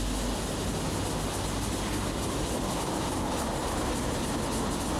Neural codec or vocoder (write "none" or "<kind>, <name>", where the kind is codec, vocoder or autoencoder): none